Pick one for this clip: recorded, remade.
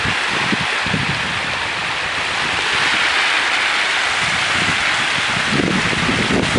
recorded